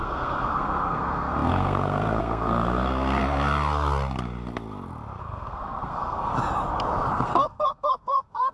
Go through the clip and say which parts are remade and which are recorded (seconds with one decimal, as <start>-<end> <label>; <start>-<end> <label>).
0.0-3.2 remade; 3.2-5.2 recorded; 5.2-6.3 remade; 6.3-7.1 recorded; 7.1-8.5 remade